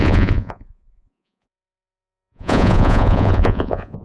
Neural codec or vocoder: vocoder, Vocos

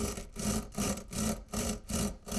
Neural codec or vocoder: none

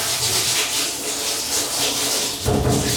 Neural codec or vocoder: none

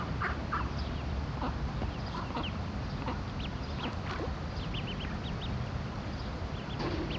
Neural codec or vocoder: none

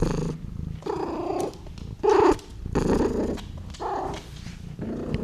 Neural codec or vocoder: none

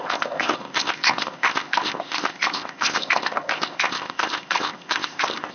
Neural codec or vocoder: codec, ZipCodec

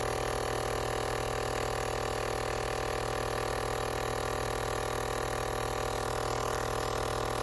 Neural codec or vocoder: none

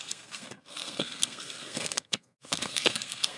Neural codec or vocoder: codec, SNAC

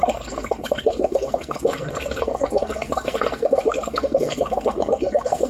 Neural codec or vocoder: codec, SNAC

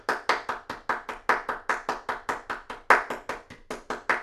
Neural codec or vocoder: none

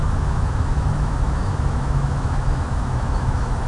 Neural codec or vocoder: autoencoder, DAC-VAE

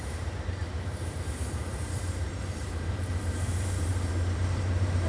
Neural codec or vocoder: vocoder, BigVGAN v2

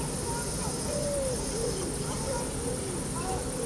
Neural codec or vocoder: none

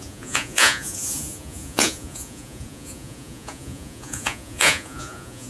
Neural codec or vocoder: vocoder, Vocos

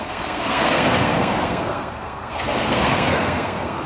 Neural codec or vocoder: codec, SNAC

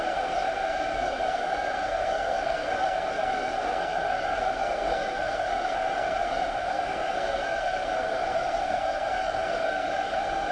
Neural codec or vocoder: codec, SNAC